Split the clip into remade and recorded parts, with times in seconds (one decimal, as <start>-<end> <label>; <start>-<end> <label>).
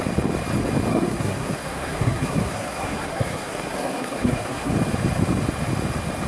0.0-0.9 recorded; 0.9-4.7 remade; 4.7-6.3 recorded